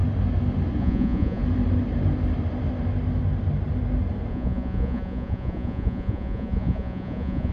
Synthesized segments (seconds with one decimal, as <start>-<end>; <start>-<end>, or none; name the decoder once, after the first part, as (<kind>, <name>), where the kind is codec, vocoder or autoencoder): 0.8-1.4 (vocoder, Vocos); 4.3-7.5

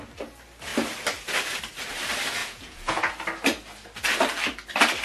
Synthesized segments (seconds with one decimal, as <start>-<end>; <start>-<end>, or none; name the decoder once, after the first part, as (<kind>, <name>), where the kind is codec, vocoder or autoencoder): 2.4-3.1 (vocoder, Vocos)